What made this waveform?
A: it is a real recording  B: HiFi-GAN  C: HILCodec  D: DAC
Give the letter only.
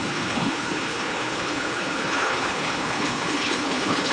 C